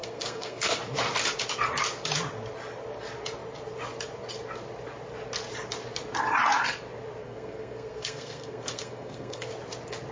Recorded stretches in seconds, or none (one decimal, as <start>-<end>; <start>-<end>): 0.8-7.2; 9.5-10.1